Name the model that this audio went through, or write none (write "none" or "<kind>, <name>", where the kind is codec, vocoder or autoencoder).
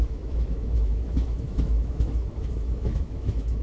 autoencoder, DAC-VAE